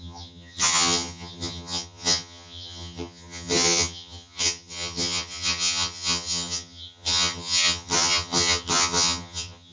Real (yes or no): no